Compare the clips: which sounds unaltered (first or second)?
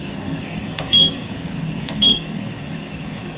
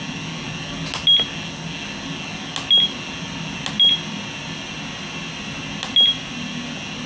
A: second